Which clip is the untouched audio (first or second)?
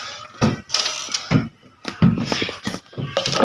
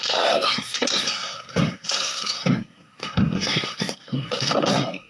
first